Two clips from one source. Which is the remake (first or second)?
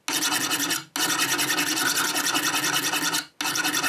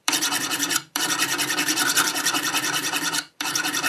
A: second